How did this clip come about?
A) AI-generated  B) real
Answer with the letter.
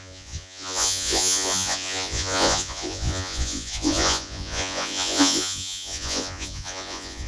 A